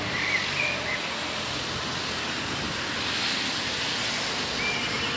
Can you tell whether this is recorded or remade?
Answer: recorded